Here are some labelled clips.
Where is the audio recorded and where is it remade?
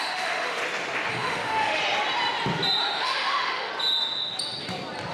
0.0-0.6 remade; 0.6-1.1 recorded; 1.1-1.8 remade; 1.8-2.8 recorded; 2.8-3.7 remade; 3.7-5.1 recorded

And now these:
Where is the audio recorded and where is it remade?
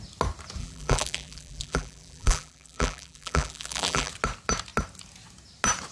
0.0-0.6 recorded; 0.6-4.1 remade; 4.1-5.9 recorded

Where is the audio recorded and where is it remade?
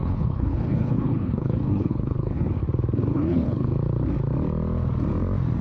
0.0-2.5 remade; 2.5-3.1 recorded; 3.1-3.7 remade; 3.7-5.6 recorded